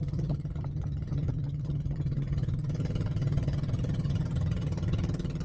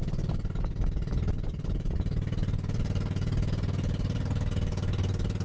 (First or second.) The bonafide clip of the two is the second